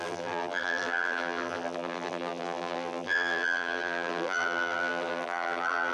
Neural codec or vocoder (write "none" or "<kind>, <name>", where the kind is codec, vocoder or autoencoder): vocoder, BigVGAN v2